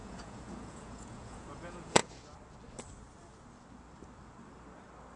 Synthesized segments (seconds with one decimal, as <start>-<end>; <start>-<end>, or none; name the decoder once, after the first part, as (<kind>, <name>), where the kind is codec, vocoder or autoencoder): 0.0-2.0 (vocoder, Vocos)